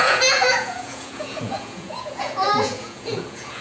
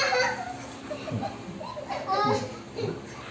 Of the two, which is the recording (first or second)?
second